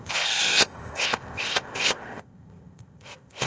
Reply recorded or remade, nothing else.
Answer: remade